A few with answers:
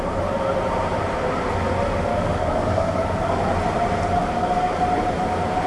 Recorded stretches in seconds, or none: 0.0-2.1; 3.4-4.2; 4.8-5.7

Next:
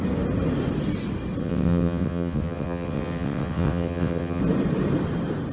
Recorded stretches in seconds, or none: 0.0-1.4; 4.4-5.5